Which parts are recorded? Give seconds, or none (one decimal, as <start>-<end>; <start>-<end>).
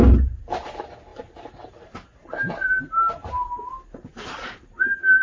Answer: 0.0-5.2